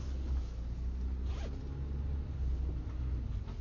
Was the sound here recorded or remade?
recorded